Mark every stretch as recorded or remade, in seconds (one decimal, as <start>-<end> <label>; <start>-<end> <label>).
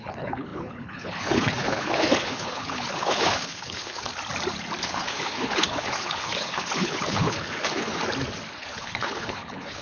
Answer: 0.0-4.1 remade; 4.1-4.8 recorded; 4.8-8.0 remade; 8.0-8.6 recorded; 8.6-9.8 remade